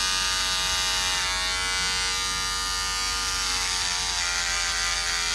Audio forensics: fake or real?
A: real